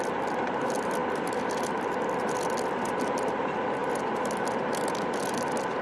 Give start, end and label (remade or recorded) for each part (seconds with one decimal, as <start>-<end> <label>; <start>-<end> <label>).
0.0-5.8 recorded